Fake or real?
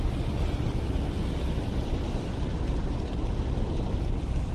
fake